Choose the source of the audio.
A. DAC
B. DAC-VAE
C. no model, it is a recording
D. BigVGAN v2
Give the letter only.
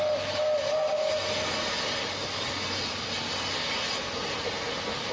C